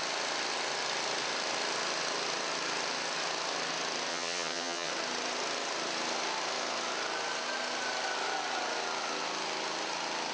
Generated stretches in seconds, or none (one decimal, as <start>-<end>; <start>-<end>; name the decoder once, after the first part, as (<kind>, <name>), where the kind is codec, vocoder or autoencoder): 4.1-4.9 (vocoder, HiFi-GAN)